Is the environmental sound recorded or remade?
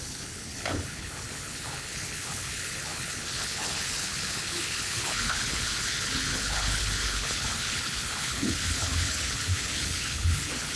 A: remade